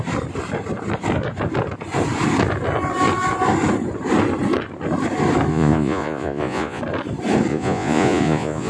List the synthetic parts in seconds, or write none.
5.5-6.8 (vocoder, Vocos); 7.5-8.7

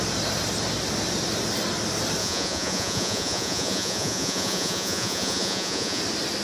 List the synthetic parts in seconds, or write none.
2.2-6.0 (vocoder, Vocos)